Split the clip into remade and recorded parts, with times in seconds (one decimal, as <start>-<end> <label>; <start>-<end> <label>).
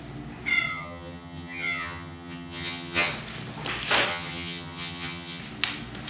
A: 0.0-0.7 recorded; 0.7-3.1 remade; 3.1-4.1 recorded; 4.1-5.4 remade; 5.4-6.1 recorded